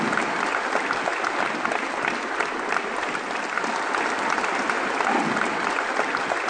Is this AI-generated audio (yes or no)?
no